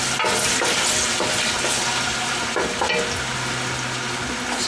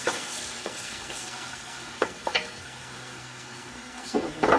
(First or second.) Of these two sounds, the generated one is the second